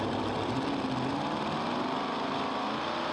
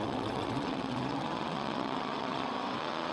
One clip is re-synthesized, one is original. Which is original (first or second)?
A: first